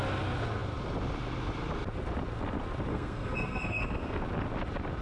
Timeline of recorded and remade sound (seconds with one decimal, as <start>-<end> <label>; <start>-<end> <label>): 0.0-2.9 recorded; 2.9-4.2 remade; 4.2-5.0 recorded